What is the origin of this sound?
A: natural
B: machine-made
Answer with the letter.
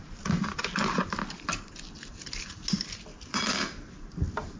A